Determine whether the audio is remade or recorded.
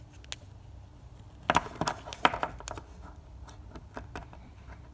recorded